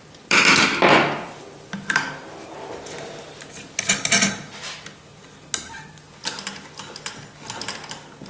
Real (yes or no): yes